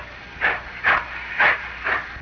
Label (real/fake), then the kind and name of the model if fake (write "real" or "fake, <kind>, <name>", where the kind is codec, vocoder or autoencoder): real